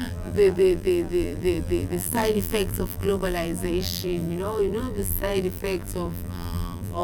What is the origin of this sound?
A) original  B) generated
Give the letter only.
B